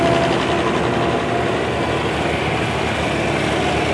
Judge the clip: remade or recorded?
recorded